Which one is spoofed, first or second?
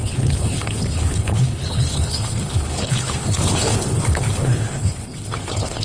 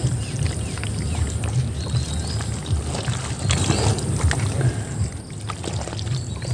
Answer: first